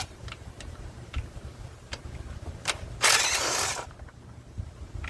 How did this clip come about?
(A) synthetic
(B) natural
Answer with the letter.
A